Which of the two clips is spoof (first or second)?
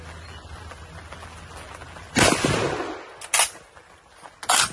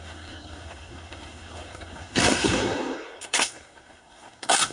second